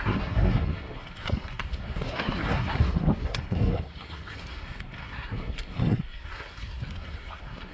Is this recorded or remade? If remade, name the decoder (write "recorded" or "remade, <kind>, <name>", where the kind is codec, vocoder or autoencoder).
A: remade, codec, SNAC